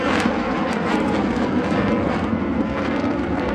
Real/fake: fake